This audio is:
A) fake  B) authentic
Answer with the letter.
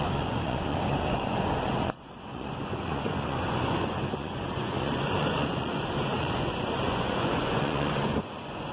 A